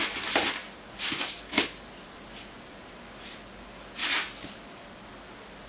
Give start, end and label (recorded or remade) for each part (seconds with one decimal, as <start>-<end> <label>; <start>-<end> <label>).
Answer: 0.0-5.7 recorded